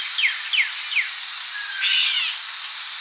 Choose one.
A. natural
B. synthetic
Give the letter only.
A